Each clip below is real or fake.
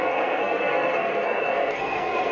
fake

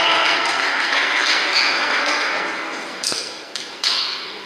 fake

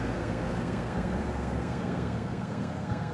fake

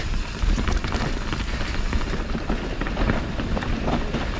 real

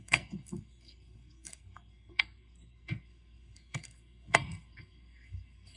fake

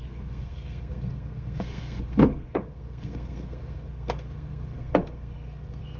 fake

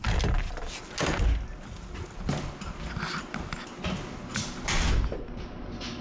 real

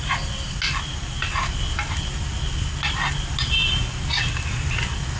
real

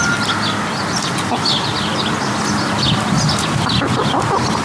real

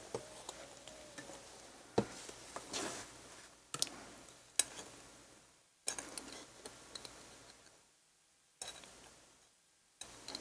real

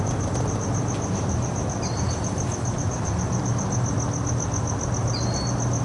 real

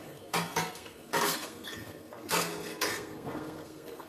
fake